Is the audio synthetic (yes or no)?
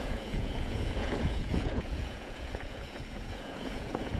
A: yes